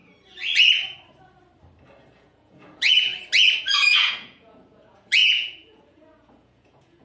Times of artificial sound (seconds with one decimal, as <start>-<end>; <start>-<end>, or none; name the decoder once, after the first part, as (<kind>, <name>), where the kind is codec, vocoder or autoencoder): 2.1-3.1 (vocoder, Vocos); 3.6-7.0